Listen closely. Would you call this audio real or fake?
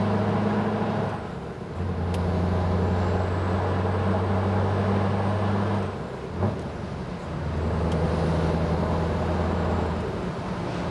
real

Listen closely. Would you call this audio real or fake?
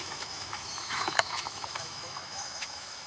fake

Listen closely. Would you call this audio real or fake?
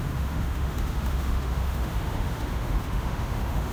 fake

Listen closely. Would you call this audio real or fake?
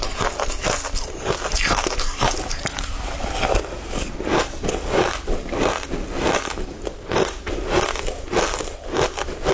real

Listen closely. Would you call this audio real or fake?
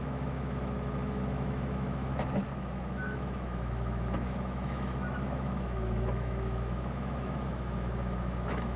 fake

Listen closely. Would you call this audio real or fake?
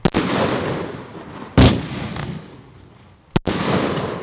real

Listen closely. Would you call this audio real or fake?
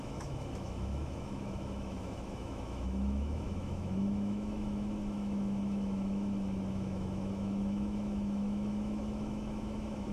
fake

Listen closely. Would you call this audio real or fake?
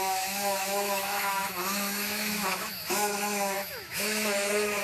fake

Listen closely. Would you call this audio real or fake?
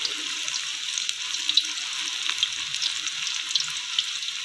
real